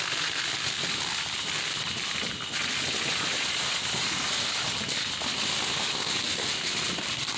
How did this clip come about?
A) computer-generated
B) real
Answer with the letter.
B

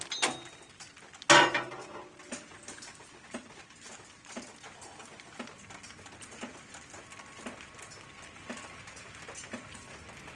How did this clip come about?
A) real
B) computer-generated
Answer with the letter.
A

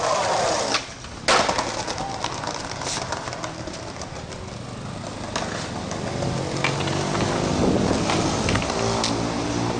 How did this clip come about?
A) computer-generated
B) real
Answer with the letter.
B